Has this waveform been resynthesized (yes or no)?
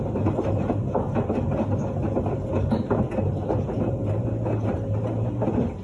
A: no